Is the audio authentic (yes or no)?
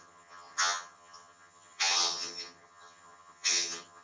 no